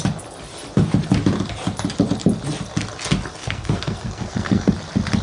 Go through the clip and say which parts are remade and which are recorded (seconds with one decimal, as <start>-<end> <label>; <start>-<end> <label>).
0.0-3.4 recorded; 3.4-4.7 remade; 4.7-5.2 recorded